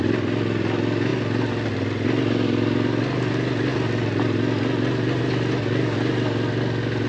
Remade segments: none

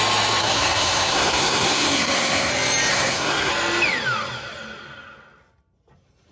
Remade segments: 0.4-2.5; 2.9-3.5

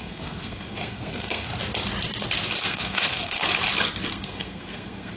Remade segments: 0.0-1.5; 2.6-3.4; 4.1-5.2

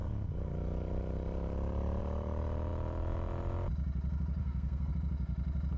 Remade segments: 4.4-4.9